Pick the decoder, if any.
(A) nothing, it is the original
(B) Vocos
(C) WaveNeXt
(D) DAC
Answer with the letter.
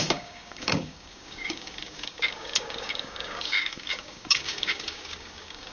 D